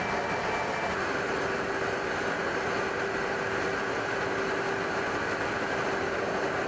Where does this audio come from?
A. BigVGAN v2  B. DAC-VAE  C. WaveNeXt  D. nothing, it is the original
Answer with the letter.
D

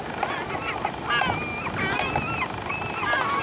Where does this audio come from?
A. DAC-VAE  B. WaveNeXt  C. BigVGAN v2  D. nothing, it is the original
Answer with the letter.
D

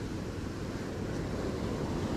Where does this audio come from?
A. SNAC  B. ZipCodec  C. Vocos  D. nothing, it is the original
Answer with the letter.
D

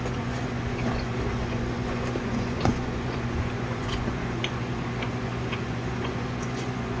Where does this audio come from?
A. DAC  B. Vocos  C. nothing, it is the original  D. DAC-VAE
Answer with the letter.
B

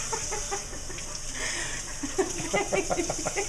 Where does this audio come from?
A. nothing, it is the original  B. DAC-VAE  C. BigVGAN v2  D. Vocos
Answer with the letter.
A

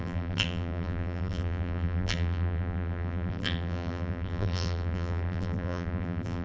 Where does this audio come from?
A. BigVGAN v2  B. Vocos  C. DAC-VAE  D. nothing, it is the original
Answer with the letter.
A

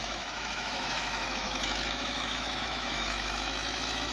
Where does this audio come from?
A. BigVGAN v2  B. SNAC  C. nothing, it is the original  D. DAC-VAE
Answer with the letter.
D